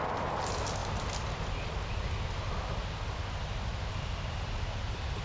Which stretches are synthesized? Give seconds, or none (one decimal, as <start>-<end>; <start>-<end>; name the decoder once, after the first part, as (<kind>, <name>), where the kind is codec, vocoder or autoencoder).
none

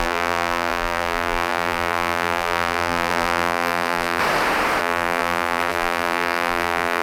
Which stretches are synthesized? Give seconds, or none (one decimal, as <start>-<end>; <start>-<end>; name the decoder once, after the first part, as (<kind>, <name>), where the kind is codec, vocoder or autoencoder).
0.0-4.2 (vocoder, BigVGAN v2); 4.8-7.0

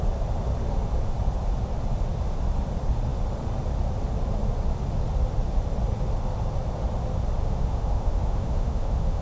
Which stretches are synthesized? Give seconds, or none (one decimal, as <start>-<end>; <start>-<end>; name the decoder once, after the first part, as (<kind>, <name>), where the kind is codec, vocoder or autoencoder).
7.4-9.2 (autoencoder, DAC-VAE)

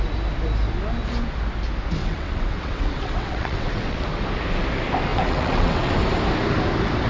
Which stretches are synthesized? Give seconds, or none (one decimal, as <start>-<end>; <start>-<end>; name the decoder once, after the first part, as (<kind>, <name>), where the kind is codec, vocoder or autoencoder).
2.0-4.0 (vocoder, WaveNeXt); 5.1-5.9